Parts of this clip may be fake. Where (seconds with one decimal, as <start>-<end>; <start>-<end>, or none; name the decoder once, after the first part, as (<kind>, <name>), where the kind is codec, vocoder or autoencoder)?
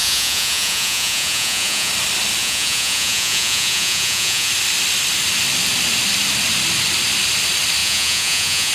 0.0-1.9 (vocoder, Vocos); 2.4-4.5; 7.8-8.7